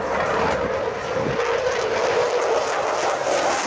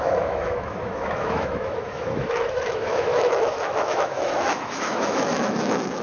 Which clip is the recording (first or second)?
first